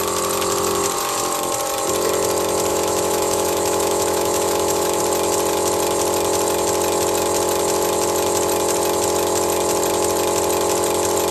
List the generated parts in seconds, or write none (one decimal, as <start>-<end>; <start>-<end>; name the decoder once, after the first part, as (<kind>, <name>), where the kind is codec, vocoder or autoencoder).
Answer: 2.7-5.0 (autoencoder, DAC-VAE)